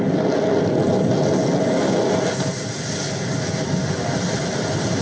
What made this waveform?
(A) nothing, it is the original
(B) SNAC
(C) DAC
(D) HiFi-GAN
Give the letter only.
A